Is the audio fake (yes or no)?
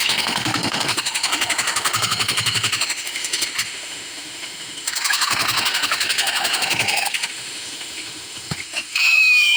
yes